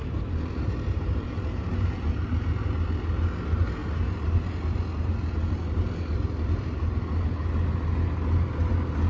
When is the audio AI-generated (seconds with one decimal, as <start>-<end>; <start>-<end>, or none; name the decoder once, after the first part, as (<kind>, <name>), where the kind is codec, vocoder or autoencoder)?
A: 0.0-2.2 (vocoder, BigVGAN v2)